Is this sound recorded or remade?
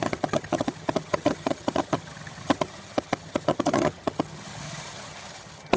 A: remade